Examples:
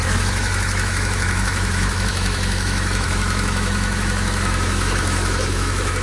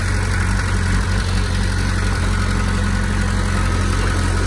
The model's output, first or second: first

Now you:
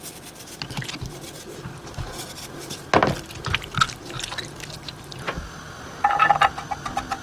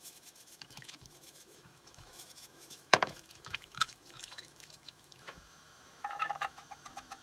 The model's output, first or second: second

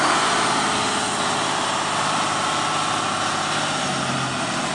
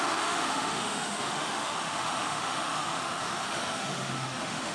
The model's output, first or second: second